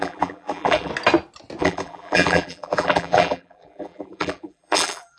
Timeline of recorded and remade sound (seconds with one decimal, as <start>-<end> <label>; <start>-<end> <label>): 0.0-0.9 remade; 0.9-1.6 recorded; 1.6-5.2 remade